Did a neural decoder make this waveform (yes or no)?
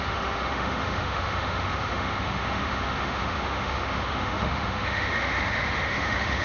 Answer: yes